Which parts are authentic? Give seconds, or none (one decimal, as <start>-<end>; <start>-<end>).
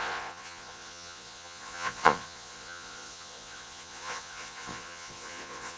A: none